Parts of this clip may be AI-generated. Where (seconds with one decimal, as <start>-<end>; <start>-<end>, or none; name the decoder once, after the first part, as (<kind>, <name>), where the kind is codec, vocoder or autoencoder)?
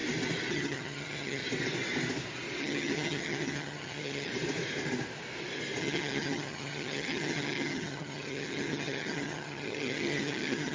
0.5-1.4 (vocoder, HiFi-GAN); 2.6-4.3; 5.8-10.7